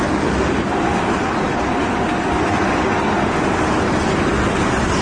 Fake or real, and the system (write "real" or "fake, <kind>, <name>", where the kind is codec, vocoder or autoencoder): real